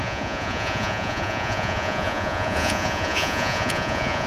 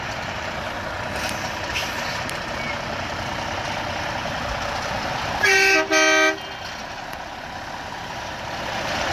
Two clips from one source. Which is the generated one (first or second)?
first